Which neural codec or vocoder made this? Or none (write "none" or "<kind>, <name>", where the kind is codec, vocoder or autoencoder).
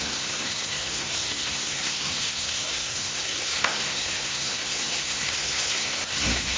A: codec, SNAC